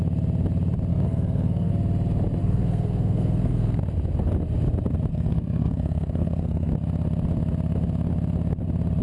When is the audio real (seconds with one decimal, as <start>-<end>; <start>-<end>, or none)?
0.0-0.9; 1.7-2.4; 3.8-5.1; 6.7-9.0